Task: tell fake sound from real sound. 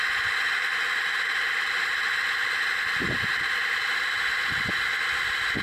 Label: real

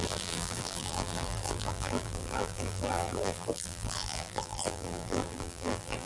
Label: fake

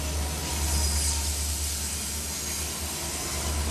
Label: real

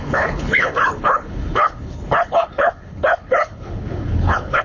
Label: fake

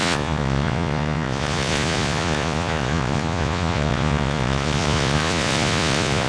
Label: fake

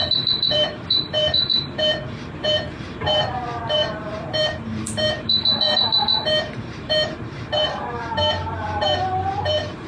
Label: fake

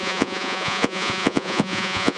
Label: fake